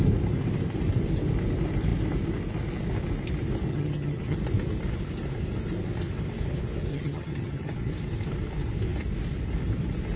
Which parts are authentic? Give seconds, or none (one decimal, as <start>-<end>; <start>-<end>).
0.0-3.7; 4.4-6.9; 7.9-10.2